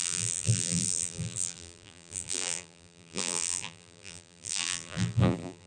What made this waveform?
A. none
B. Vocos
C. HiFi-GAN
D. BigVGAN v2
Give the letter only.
D